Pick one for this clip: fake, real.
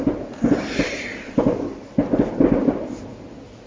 real